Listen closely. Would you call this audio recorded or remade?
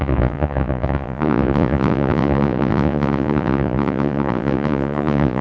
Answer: remade